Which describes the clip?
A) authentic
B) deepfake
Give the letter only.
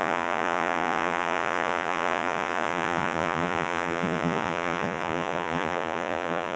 B